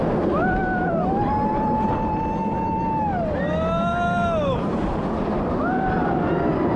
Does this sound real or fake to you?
real